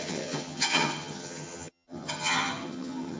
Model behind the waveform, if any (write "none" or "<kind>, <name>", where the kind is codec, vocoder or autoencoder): vocoder, HiFi-GAN